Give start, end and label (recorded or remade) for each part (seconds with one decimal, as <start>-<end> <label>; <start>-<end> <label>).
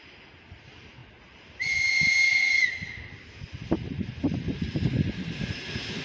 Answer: 0.0-6.0 recorded